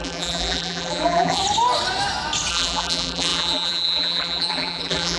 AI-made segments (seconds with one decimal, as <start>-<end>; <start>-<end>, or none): 0.0-1.4; 2.5-5.2